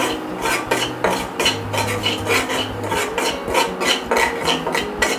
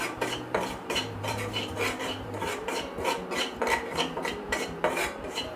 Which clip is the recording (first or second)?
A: first